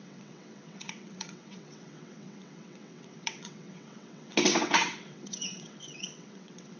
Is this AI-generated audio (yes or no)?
yes